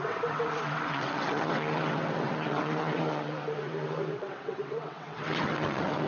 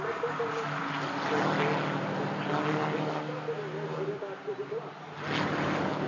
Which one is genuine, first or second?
second